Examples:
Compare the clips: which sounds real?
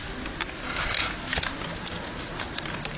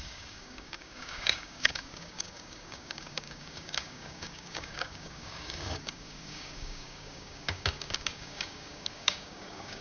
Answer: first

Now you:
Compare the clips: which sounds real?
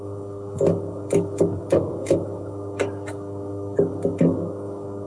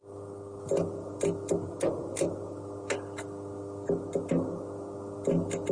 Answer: second